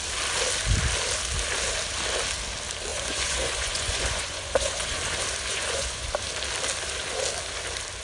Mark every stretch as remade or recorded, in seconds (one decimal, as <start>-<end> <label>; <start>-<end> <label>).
0.0-2.9 recorded; 2.9-5.0 remade; 5.0-5.5 recorded; 5.5-6.1 remade; 6.1-8.0 recorded